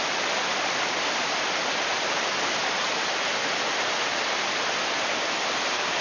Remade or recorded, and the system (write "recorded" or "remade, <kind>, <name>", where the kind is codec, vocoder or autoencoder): recorded